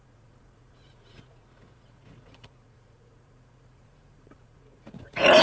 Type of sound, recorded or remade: remade